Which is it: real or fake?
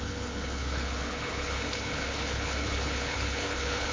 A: fake